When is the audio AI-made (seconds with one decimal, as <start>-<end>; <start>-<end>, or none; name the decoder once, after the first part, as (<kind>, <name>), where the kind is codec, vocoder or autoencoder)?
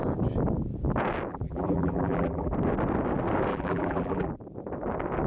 1.3-2.5 (vocoder, BigVGAN v2); 3.5-4.3